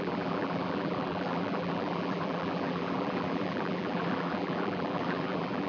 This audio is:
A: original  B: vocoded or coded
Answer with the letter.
B